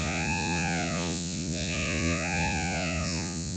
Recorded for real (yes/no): no